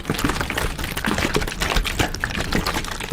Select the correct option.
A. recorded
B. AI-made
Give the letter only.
A